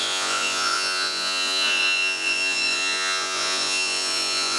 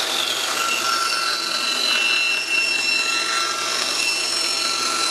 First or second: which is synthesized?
first